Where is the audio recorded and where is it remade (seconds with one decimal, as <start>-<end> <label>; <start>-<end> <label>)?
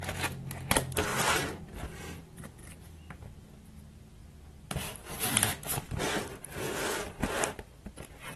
0.0-1.1 recorded; 1.1-1.8 remade; 1.8-2.6 recorded; 2.6-3.8 remade; 3.8-4.2 recorded; 4.2-7.9 remade; 7.9-8.4 recorded